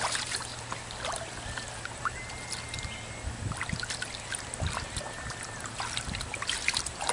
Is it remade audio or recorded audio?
recorded